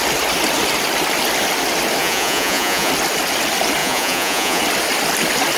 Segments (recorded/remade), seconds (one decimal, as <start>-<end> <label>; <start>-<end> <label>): 0.0-2.0 recorded; 2.0-2.9 remade; 2.9-3.8 recorded; 3.8-4.6 remade; 4.6-5.6 recorded